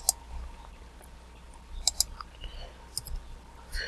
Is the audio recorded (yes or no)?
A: yes